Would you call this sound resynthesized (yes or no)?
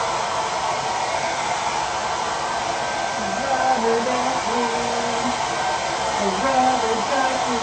no